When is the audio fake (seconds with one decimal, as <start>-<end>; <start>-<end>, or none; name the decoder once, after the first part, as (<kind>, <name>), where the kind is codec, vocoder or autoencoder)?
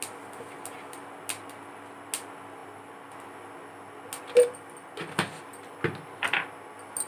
none